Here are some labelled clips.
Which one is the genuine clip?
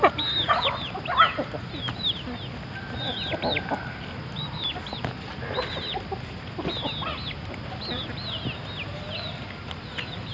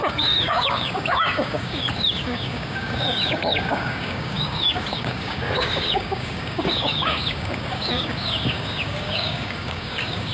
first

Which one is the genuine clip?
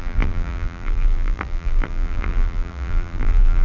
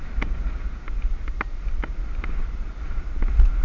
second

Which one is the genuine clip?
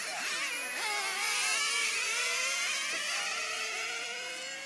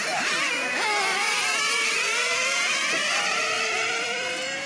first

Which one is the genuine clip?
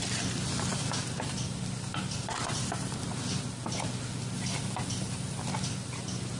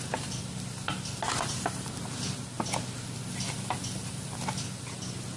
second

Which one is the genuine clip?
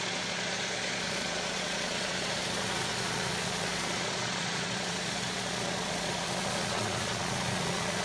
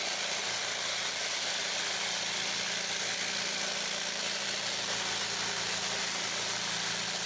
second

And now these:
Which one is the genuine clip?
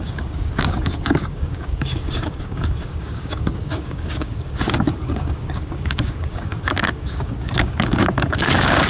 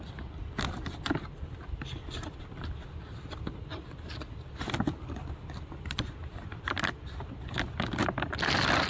second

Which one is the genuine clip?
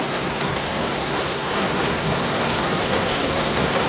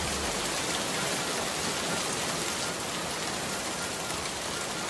second